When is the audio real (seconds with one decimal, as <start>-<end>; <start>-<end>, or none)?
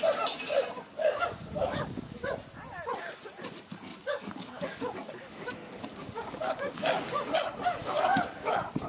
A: 0.0-1.0; 2.3-3.9; 5.5-5.9; 7.0-7.8; 8.5-8.9